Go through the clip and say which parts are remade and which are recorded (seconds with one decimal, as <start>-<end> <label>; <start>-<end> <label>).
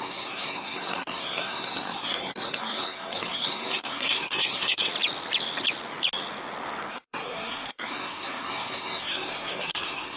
0.0-4.9 remade; 4.9-6.9 recorded; 6.9-10.2 remade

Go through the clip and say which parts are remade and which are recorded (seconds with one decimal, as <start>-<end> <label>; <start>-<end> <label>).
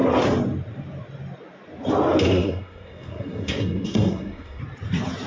0.0-2.3 recorded; 2.3-4.6 remade; 4.6-5.3 recorded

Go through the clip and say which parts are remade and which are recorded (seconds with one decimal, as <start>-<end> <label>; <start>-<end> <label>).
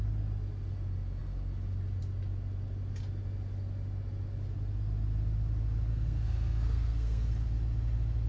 0.0-5.9 recorded; 5.9-7.3 remade; 7.3-8.3 recorded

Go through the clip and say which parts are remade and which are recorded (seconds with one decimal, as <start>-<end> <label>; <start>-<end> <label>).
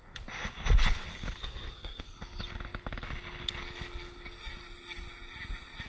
0.0-1.4 recorded; 1.4-2.0 remade; 2.0-5.9 recorded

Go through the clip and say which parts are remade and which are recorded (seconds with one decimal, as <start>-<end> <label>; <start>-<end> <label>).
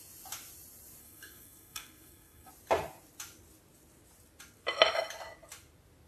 0.0-1.0 recorded; 1.0-2.5 remade; 2.5-6.1 recorded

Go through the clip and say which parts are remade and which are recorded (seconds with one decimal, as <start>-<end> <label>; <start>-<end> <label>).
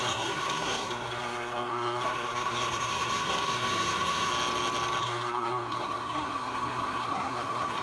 0.0-4.3 remade; 4.3-5.0 recorded; 5.0-7.8 remade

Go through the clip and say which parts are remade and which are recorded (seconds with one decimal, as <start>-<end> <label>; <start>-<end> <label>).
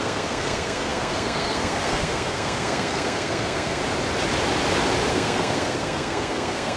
0.0-3.8 remade; 3.8-5.1 recorded; 5.1-6.8 remade